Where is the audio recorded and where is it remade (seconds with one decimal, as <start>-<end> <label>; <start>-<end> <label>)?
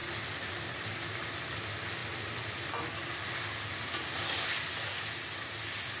0.0-6.0 recorded